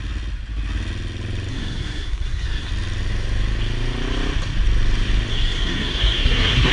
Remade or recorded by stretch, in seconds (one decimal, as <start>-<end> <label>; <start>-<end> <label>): 0.0-1.5 recorded; 1.5-2.7 remade; 2.7-5.3 recorded; 5.3-6.7 remade